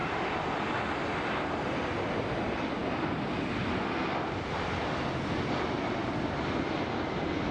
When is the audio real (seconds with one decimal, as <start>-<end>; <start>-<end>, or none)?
0.0-7.5